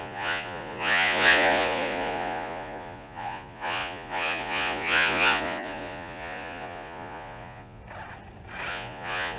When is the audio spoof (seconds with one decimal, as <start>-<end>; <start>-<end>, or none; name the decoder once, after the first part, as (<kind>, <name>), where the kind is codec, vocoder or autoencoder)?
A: 0.0-7.8 (vocoder, Vocos); 8.7-9.4

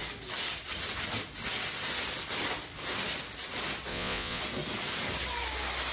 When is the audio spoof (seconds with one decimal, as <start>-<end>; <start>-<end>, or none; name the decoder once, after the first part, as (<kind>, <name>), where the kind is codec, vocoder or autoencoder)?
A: 3.9-4.4 (vocoder, Vocos)

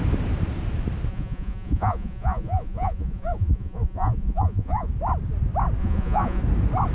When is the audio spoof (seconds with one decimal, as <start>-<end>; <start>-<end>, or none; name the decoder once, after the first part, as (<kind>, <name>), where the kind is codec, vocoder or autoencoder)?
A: 1.1-4.9 (vocoder, Vocos); 5.8-6.4